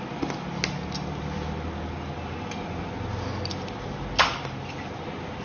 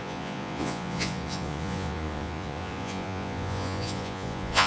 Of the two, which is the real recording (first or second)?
first